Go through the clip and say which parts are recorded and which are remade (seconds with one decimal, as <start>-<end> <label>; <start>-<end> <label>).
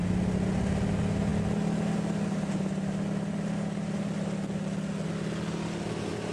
0.0-6.3 recorded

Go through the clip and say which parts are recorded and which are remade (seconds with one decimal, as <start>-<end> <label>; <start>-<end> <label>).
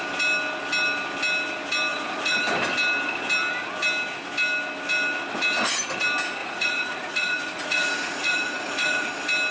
0.0-1.9 recorded; 1.9-2.4 remade; 2.4-6.4 recorded; 6.4-9.1 remade; 9.1-9.5 recorded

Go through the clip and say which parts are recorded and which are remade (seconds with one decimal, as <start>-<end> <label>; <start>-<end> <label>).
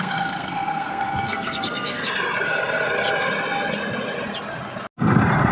0.0-2.0 remade; 2.0-5.5 recorded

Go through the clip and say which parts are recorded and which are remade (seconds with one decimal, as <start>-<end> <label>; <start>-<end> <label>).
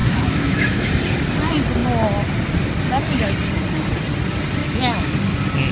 0.0-0.9 remade; 0.9-4.6 recorded; 4.6-5.1 remade; 5.1-5.7 recorded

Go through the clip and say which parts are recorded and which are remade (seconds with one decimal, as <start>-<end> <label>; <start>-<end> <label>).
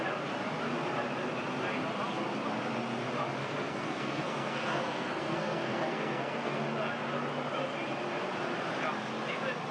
0.0-3.4 recorded; 3.4-6.6 remade; 6.6-9.7 recorded